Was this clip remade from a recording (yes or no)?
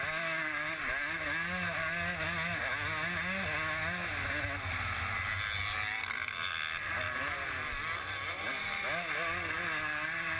no